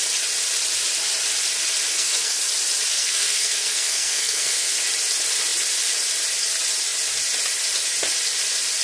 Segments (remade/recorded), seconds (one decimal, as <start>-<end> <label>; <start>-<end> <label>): 0.0-1.9 recorded; 1.9-2.4 remade; 2.4-3.0 recorded; 3.0-4.7 remade; 4.7-8.8 recorded